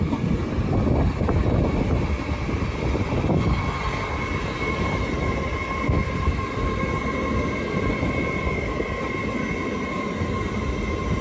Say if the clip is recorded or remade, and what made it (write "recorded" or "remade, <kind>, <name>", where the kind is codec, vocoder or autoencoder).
recorded